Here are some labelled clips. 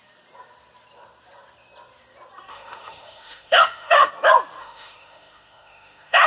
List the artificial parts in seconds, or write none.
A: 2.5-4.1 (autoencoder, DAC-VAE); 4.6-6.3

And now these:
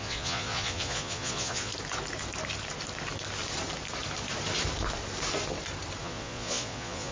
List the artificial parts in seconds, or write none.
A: 0.0-1.7 (vocoder, Vocos); 6.0-7.1

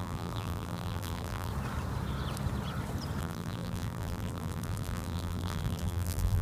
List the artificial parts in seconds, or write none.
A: 0.0-1.5 (vocoder, BigVGAN v2); 3.2-6.4

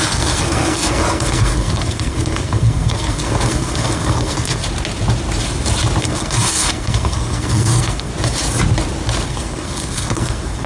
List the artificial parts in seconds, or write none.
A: 0.0-4.6 (codec, SNAC); 6.0-8.1; 9.3-10.7

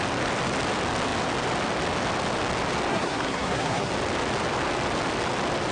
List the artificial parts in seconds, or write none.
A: 2.9-3.9 (codec, SNAC)

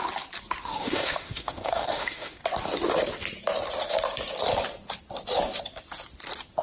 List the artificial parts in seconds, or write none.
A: 0.6-2.4 (autoencoder, DAC-VAE)